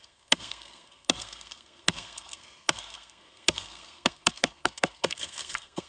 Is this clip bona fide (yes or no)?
no